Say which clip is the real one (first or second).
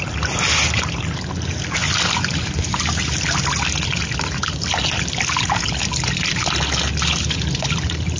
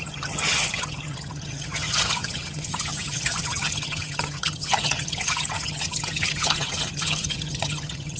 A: first